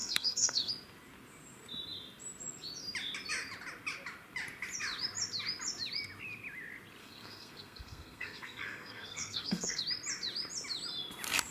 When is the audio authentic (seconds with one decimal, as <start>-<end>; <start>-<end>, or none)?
0.7-7.0; 9.8-11.5